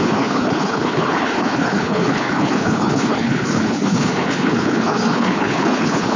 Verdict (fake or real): fake